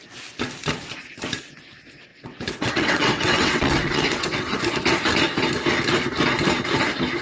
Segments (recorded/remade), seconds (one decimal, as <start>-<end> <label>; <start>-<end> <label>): 0.0-2.1 recorded; 2.1-4.6 remade; 4.6-7.2 recorded